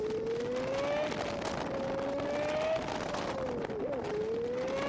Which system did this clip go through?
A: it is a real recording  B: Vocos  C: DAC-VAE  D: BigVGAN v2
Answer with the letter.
A